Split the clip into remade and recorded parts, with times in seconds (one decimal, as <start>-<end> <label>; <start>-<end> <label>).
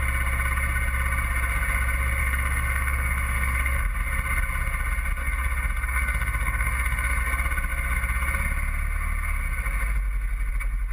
0.0-2.2 recorded; 2.2-3.9 remade; 3.9-5.2 recorded; 5.2-7.2 remade; 7.2-10.9 recorded